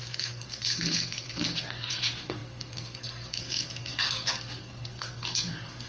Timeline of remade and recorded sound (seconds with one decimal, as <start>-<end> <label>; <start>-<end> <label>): 0.0-5.9 remade